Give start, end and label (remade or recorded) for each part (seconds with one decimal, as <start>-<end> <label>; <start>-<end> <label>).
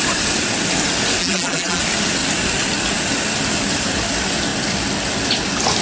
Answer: 0.0-1.2 recorded; 1.2-1.8 remade; 1.8-5.8 recorded